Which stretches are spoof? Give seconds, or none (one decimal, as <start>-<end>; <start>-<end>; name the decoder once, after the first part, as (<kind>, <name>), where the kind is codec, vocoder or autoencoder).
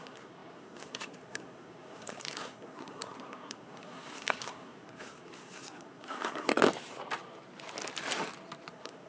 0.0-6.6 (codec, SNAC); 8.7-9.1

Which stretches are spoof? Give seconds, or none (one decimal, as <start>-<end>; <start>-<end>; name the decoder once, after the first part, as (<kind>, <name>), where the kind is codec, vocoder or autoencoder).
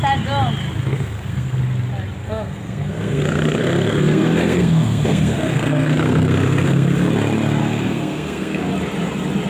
0.9-1.6 (codec, SNAC); 2.2-7.1; 7.6-8.7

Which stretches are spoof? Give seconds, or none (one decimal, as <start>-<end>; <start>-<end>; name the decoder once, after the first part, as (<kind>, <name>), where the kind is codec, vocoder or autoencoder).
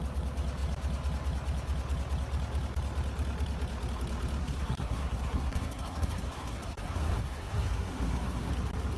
4.4-8.5 (codec, SNAC)